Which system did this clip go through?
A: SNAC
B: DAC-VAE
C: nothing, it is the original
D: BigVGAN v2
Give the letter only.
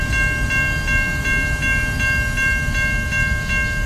C